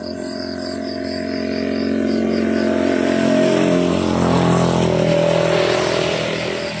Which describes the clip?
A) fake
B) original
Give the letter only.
B